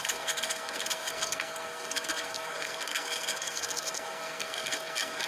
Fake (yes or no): yes